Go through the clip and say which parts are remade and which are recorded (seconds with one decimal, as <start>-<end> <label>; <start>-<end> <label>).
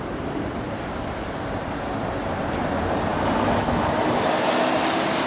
0.0-5.3 recorded